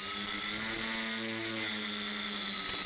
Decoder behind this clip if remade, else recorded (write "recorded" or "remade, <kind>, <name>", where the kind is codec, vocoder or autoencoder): recorded